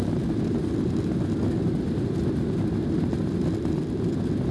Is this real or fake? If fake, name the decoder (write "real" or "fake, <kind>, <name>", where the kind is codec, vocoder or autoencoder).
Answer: real